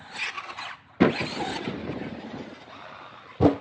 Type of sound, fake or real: real